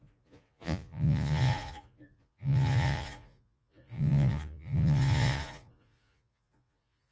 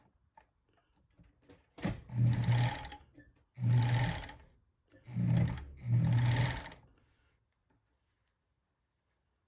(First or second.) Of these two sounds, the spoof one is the first